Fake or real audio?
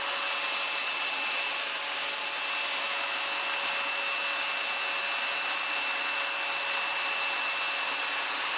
real